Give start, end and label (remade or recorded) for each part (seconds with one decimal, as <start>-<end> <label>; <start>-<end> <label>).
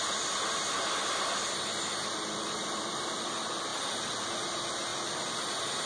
0.0-2.6 recorded; 2.6-3.2 remade; 3.2-3.7 recorded; 3.7-4.2 remade; 4.2-4.9 recorded; 4.9-5.5 remade; 5.5-5.9 recorded